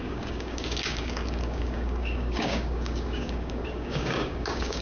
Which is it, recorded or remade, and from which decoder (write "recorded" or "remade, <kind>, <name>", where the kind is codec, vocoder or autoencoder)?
remade, codec, DAC